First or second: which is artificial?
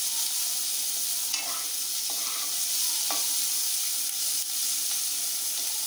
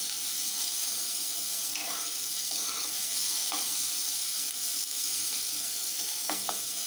second